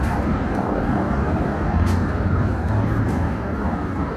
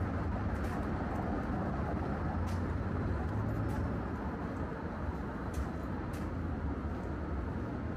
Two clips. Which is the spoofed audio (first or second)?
first